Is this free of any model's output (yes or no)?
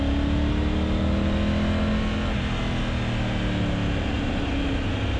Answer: yes